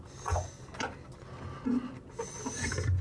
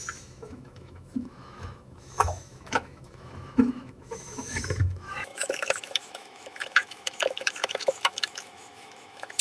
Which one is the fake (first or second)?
second